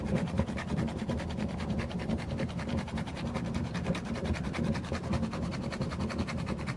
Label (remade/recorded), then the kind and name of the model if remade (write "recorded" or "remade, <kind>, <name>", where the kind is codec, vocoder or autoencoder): remade, vocoder, BigVGAN v2